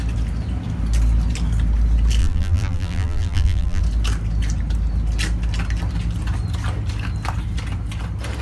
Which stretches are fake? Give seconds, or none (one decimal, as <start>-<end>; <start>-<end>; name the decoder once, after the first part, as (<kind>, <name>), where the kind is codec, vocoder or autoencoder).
2.2-3.8 (vocoder, BigVGAN v2)